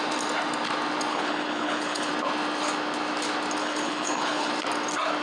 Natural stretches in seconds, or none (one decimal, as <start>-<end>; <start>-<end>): 0.0-1.1; 2.1-3.6; 4.5-5.2